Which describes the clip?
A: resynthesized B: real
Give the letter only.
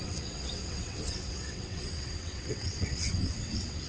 A